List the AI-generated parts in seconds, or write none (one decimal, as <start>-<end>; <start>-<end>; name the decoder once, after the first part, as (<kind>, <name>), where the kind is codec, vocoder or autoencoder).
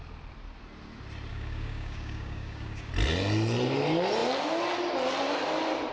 1.3-2.9 (codec, DAC)